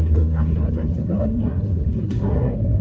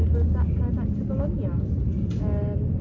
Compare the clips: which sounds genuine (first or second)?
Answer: second